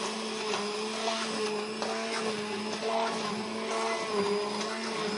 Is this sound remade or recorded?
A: recorded